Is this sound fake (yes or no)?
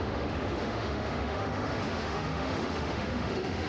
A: yes